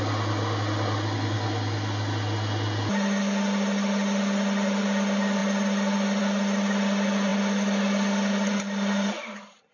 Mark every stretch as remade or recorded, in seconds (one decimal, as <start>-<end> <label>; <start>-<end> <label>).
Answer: 0.0-9.7 recorded